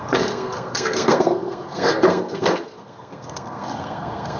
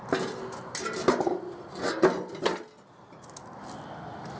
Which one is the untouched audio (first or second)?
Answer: second